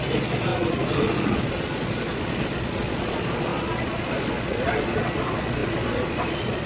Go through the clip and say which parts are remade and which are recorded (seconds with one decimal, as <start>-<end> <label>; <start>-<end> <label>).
0.0-6.7 remade